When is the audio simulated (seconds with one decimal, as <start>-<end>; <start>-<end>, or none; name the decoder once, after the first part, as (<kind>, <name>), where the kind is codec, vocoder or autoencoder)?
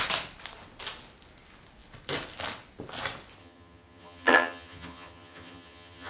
3.4-6.1 (vocoder, HiFi-GAN)